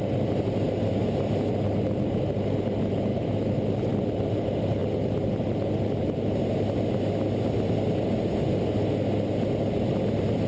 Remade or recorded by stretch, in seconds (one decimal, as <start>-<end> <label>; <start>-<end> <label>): 0.0-3.1 recorded; 3.1-3.7 remade; 3.7-10.5 recorded

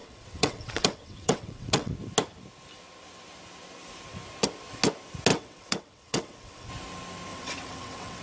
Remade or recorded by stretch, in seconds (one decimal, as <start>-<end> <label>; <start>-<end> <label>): 0.0-1.9 remade; 1.9-5.3 recorded; 5.3-6.7 remade; 6.7-7.3 recorded; 7.3-8.2 remade

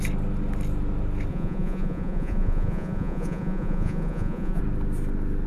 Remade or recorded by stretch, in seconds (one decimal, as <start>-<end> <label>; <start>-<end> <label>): 0.0-1.3 recorded; 1.3-4.6 remade; 4.6-5.5 recorded

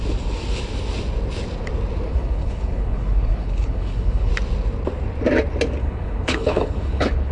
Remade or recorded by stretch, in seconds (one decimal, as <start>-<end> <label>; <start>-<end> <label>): 0.0-2.1 recorded; 2.1-4.3 remade; 4.3-5.8 recorded; 5.8-7.3 remade

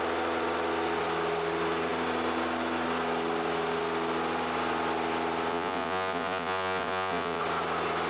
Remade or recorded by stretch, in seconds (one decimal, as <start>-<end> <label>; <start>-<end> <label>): 0.0-5.5 recorded; 5.5-7.4 remade; 7.4-8.1 recorded

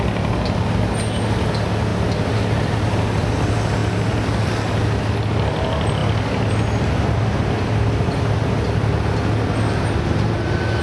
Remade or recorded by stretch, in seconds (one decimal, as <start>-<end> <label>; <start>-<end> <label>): 0.0-10.8 recorded